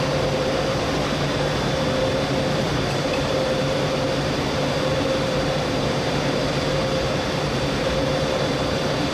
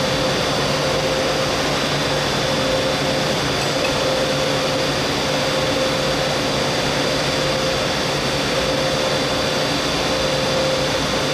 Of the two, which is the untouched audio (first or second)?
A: second